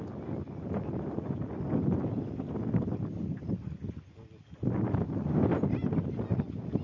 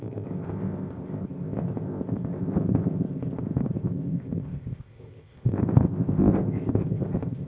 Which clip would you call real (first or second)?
first